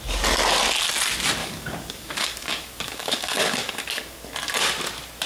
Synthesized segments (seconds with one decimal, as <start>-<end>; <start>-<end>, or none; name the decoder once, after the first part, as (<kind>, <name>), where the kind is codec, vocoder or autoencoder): 1.4-4.2 (codec, DAC)